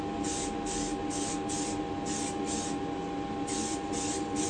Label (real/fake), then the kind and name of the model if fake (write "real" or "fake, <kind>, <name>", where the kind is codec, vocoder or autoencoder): real